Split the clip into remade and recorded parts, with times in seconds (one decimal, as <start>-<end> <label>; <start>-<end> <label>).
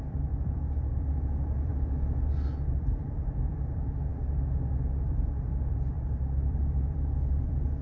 0.0-1.7 remade; 1.7-2.8 recorded; 2.8-7.8 remade